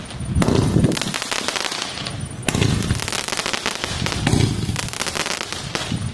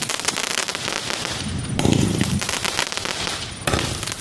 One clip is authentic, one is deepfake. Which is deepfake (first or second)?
second